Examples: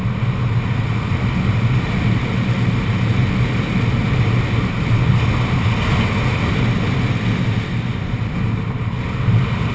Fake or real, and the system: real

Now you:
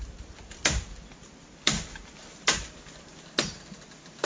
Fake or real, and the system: real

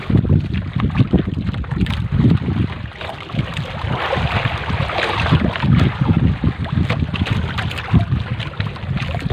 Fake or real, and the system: real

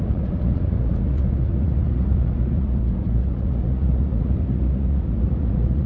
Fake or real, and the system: fake, vocoder, Vocos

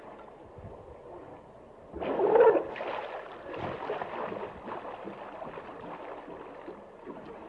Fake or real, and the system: real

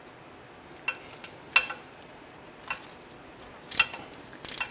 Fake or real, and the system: real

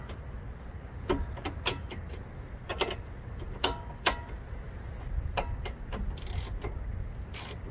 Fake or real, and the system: real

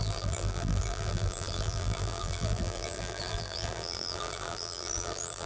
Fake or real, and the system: fake, vocoder, BigVGAN v2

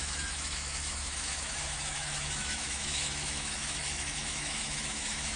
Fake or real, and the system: fake, autoencoder, DAC-VAE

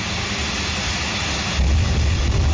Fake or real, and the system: real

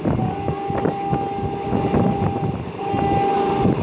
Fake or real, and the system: real